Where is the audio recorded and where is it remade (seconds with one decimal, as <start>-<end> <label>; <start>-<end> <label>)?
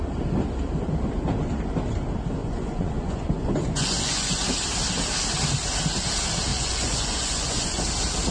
0.0-2.4 recorded; 2.4-4.5 remade; 4.5-6.5 recorded; 6.5-7.8 remade; 7.8-8.3 recorded